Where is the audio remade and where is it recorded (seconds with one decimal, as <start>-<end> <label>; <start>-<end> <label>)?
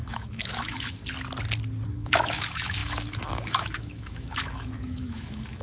0.0-1.0 remade; 1.0-1.9 recorded; 1.9-5.6 remade